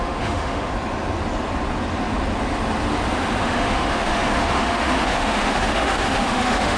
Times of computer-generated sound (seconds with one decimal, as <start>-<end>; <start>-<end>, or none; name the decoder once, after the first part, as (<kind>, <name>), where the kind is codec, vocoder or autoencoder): 0.0-0.7 (autoencoder, DAC-VAE); 3.4-6.8